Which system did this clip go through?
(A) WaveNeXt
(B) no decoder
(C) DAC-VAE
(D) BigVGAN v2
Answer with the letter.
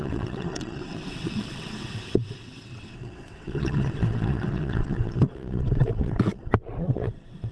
A